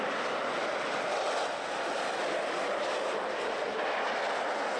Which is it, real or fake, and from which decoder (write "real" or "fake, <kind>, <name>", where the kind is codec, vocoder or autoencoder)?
real